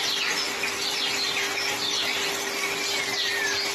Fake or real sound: real